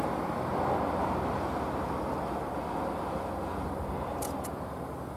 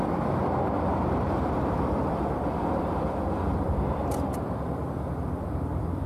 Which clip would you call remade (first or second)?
second